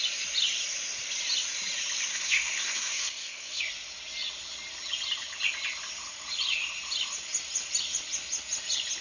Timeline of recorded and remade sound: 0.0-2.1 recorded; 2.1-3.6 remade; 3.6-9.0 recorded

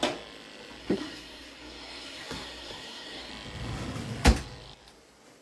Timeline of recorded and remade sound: 0.0-0.8 recorded; 0.8-3.3 remade; 3.3-5.4 recorded

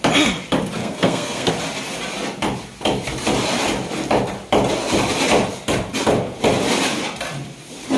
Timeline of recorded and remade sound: 0.0-0.8 recorded; 0.8-1.5 remade; 1.5-8.0 recorded